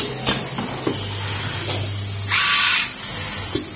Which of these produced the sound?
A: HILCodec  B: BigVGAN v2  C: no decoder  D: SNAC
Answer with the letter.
C